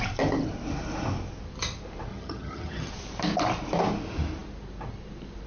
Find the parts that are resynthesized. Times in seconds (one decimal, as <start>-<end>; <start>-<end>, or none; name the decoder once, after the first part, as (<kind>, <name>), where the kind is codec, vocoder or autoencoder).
2.1-2.9 (vocoder, HiFi-GAN)